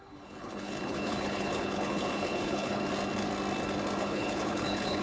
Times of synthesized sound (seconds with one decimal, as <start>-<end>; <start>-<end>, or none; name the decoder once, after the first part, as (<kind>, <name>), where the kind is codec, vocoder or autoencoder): 0.0-2.8 (codec, HILCodec); 4.0-5.0